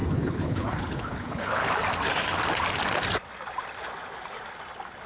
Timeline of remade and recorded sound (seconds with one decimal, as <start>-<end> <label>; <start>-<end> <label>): 0.0-1.6 remade; 1.6-5.1 recorded